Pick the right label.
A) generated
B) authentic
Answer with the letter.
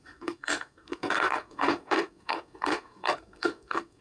A